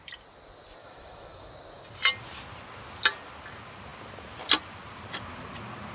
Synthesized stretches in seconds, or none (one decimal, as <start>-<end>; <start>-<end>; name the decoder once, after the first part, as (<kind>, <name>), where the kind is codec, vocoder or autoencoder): 0.8-1.5 (autoencoder, DAC-VAE)